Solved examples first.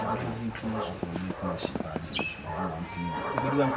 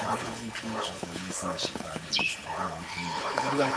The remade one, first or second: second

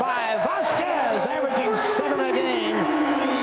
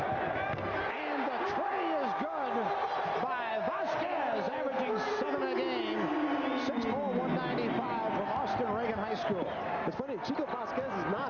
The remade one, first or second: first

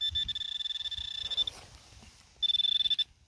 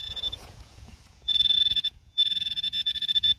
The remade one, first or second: second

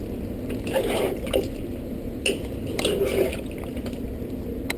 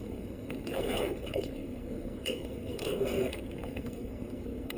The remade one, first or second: second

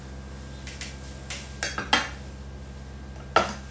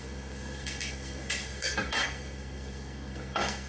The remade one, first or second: second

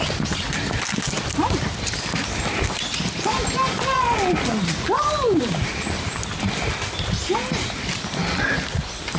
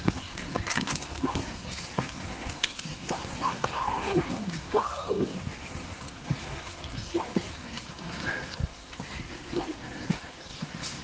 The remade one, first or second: second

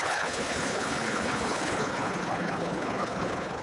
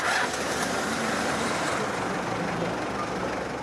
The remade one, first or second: first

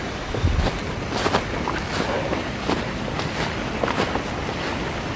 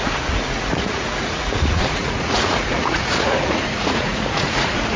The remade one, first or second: second